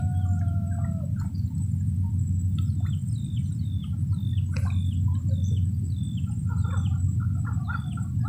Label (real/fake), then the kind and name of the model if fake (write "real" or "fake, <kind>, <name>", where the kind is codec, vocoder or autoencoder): real